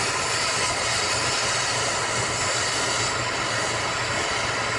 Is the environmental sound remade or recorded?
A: recorded